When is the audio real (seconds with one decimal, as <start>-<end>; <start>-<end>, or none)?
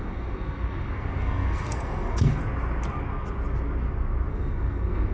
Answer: 2.4-4.3